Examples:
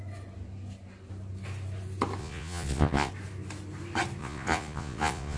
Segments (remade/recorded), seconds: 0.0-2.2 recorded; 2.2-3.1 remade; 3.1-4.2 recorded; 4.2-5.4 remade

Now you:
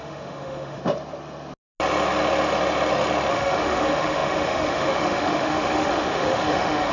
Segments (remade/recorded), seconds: 0.0-0.8 remade; 0.8-3.3 recorded; 3.3-6.9 remade

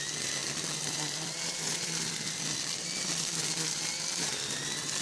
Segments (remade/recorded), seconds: 0.0-0.4 recorded; 0.4-3.4 remade; 3.4-5.0 recorded

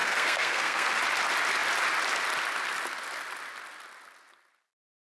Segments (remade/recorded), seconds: 0.0-0.9 remade; 0.9-5.0 recorded